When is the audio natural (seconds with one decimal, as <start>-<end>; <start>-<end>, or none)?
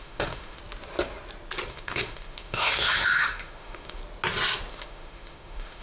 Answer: 0.6-1.7; 4.0-4.7